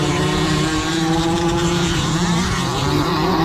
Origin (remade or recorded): remade